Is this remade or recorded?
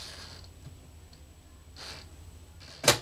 recorded